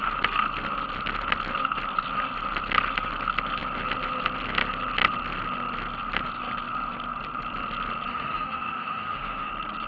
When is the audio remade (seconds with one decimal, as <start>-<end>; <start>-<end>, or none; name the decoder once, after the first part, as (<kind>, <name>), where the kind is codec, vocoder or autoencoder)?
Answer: 8.1-9.5 (autoencoder, DAC-VAE)